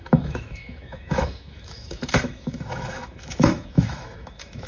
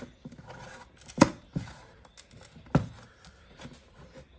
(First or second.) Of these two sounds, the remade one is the first